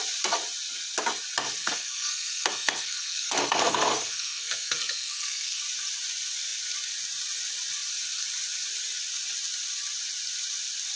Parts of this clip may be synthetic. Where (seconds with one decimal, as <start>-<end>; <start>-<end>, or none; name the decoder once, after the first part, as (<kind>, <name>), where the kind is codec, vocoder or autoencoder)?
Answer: 1.6-5.6 (codec, SNAC)